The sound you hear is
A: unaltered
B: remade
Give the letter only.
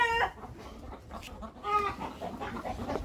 A